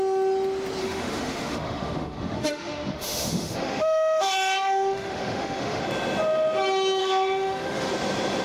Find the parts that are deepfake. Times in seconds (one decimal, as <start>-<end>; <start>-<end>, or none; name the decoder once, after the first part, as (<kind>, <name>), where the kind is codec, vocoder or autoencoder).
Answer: 0.8-5.8 (autoencoder, DAC-VAE); 7.0-7.9